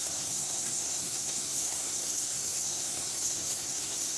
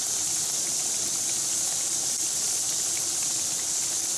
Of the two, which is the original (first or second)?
second